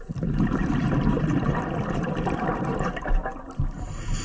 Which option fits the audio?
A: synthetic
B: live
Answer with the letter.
B